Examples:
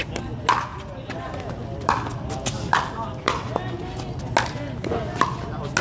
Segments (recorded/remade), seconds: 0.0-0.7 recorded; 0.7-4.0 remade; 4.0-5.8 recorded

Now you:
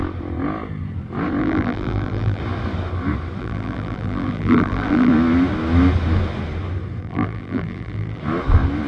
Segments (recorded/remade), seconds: 0.0-1.4 recorded; 1.4-2.4 remade; 2.4-3.4 recorded; 3.4-5.1 remade; 5.1-7.0 recorded; 7.0-8.2 remade; 8.2-8.9 recorded

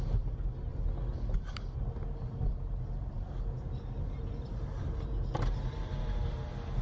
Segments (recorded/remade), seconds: 0.0-6.8 recorded

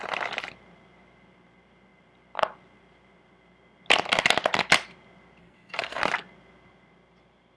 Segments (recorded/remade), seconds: 0.0-5.4 recorded; 5.4-6.0 remade; 6.0-7.6 recorded

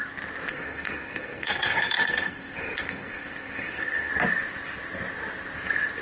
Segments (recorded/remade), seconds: 0.0-0.5 recorded; 0.5-4.1 remade; 4.1-6.0 recorded